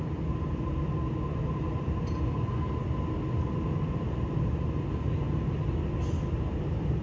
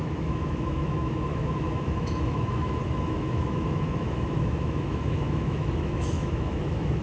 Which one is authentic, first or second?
first